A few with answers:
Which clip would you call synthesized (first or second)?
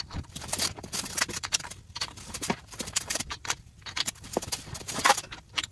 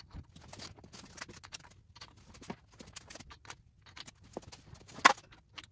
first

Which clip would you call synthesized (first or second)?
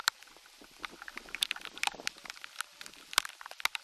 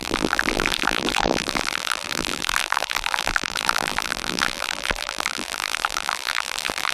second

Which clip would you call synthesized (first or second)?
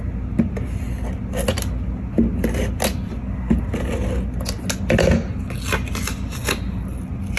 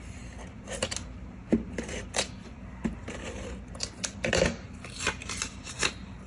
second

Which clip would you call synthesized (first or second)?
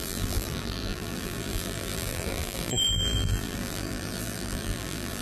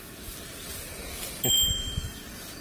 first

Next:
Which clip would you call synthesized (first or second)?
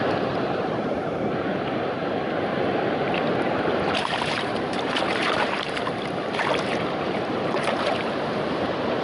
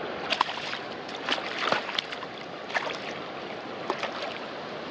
first